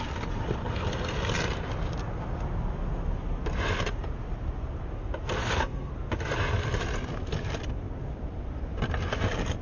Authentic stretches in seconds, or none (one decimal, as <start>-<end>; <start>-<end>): 0.0-5.4; 5.9-9.6